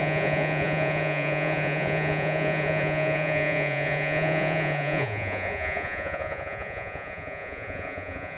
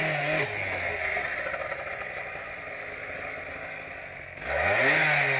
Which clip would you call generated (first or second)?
first